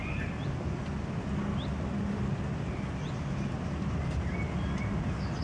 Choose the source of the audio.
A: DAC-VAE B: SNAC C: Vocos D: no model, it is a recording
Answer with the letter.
D